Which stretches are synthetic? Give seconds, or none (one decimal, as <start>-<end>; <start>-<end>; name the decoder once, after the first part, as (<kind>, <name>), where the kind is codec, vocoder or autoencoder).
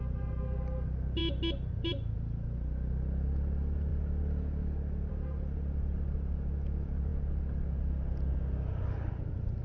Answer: none